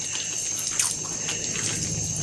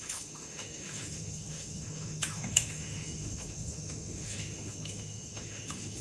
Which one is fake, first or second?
second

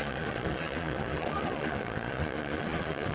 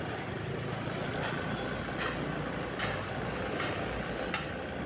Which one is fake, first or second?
first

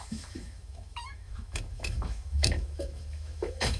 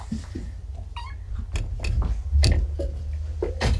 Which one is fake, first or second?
first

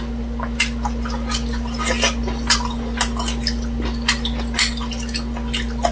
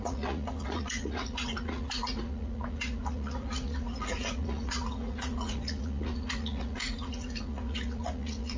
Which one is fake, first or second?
second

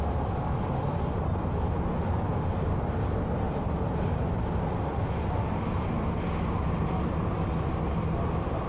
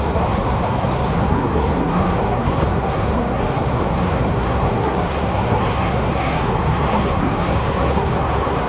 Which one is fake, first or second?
second